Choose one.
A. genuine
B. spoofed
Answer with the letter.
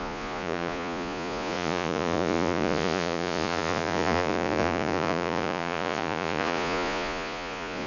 B